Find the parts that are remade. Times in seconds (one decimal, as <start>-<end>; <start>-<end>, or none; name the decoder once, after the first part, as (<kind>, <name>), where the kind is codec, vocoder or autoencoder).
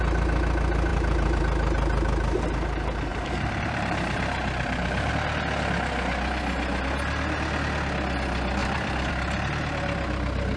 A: 0.9-1.4 (vocoder, BigVGAN v2); 3.1-5.1; 8.6-9.1